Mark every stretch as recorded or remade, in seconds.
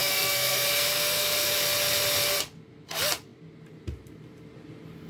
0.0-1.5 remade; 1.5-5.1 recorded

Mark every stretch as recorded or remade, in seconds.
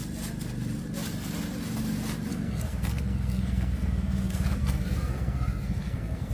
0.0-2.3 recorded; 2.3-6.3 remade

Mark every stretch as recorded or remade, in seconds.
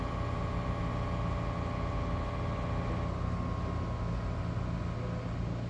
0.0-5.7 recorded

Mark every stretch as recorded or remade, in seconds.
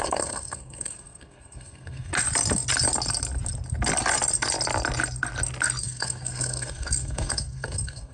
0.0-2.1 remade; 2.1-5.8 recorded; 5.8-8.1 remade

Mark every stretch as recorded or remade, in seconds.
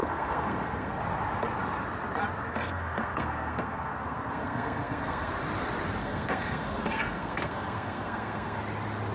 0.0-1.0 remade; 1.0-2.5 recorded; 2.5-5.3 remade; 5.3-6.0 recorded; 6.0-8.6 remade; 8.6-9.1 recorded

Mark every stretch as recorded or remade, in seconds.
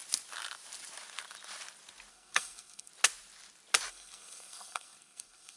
0.0-2.1 recorded; 2.1-2.9 remade; 2.9-3.9 recorded; 3.9-5.6 remade